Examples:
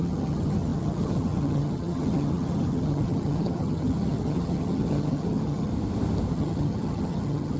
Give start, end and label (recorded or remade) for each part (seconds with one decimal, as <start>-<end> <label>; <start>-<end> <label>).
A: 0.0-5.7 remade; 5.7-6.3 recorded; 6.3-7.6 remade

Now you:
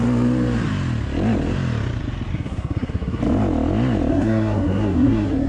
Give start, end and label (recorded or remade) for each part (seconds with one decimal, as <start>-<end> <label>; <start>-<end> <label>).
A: 0.0-2.3 recorded; 2.3-3.2 remade; 3.2-4.1 recorded; 4.1-5.5 remade

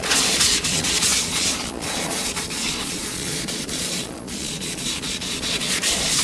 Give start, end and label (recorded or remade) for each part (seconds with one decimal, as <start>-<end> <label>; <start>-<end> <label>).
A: 0.0-6.2 remade